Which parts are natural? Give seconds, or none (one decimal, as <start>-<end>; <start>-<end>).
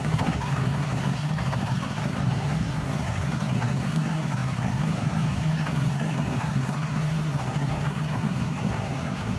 none